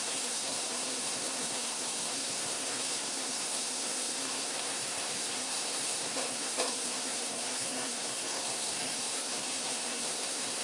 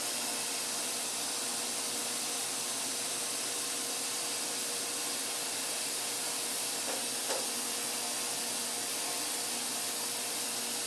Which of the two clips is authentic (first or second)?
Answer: second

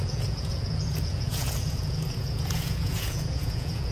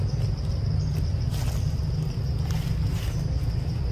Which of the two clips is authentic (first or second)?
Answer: second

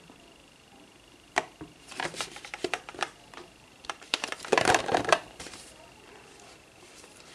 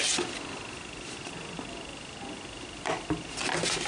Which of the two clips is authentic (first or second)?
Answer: second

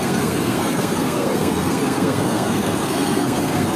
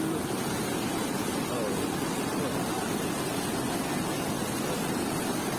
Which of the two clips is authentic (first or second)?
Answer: second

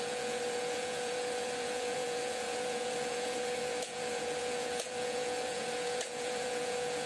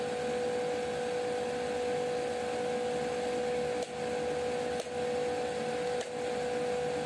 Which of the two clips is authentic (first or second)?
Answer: second